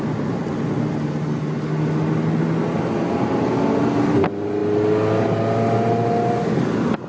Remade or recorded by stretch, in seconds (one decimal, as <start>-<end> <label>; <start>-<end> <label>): 0.0-7.1 recorded